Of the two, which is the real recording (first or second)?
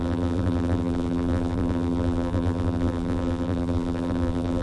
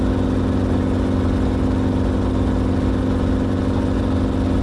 second